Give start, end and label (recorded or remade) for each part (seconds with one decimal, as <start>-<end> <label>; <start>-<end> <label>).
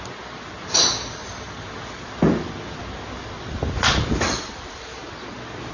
0.0-5.7 recorded